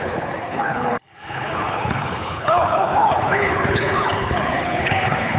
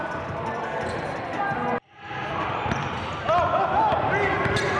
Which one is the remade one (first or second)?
first